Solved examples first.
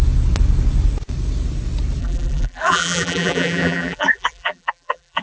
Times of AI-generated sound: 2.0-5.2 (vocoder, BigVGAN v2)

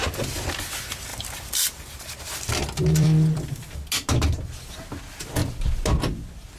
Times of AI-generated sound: 1.1-3.6 (vocoder, BigVGAN v2)

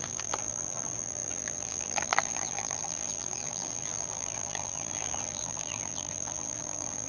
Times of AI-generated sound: 0.0-7.1 (vocoder, BigVGAN v2)